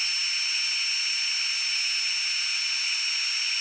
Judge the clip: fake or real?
real